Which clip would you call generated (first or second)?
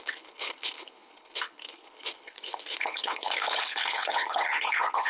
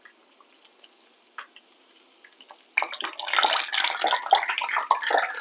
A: first